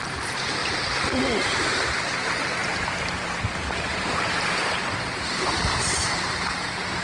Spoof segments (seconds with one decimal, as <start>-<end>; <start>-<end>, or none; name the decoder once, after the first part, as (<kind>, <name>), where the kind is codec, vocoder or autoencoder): 0.0-0.6 (vocoder, BigVGAN v2); 1.6-7.0